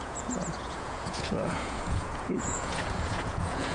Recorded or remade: remade